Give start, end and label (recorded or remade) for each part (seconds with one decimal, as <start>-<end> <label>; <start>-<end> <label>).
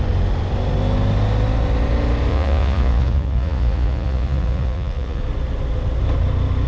0.0-2.3 recorded; 2.3-5.2 remade; 5.2-6.7 recorded